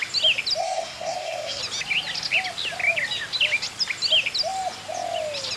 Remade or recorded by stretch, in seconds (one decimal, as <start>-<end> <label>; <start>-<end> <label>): 0.0-0.6 recorded; 0.6-1.6 remade; 1.6-5.6 recorded